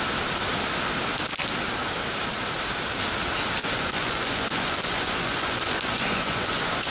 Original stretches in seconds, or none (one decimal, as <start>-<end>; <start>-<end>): 0.0-3.6